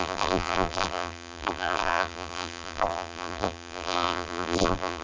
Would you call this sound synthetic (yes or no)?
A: yes